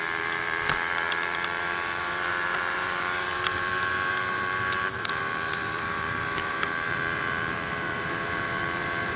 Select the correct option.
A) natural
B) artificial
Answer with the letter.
B